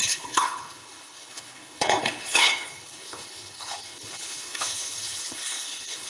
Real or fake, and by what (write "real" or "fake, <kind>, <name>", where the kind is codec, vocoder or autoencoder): fake, codec, HILCodec